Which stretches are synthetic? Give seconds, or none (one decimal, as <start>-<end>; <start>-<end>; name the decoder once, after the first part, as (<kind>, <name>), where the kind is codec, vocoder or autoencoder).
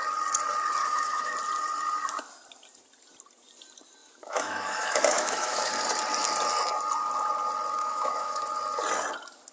0.8-1.3 (autoencoder, DAC-VAE); 4.0-5.7; 7.8-8.4